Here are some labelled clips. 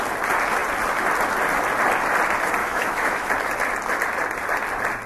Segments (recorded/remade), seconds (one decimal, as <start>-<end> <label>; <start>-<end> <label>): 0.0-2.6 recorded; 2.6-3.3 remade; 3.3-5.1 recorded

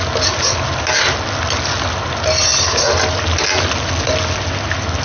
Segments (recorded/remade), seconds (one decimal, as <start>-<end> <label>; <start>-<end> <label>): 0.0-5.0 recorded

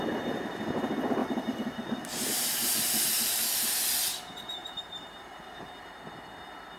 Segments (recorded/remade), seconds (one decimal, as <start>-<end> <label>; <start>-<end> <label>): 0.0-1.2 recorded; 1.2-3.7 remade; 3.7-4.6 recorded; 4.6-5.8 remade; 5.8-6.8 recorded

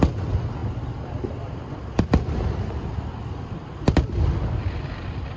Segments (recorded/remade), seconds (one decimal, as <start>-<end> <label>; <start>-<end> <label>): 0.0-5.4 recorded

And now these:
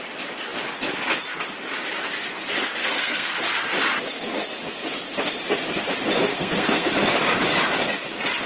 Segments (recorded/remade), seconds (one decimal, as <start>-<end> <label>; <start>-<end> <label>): 0.0-2.8 recorded; 2.8-3.4 remade; 3.4-6.3 recorded; 6.3-6.9 remade; 6.9-8.5 recorded

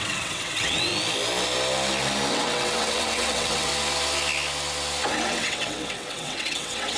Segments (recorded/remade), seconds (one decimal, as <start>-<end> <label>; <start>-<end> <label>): 0.0-0.9 remade; 0.9-2.3 recorded; 2.3-3.7 remade; 3.7-5.1 recorded; 5.1-7.0 remade

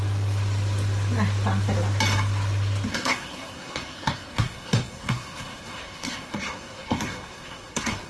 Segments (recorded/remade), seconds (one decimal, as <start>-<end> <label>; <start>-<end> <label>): 0.0-2.9 recorded; 2.9-8.1 remade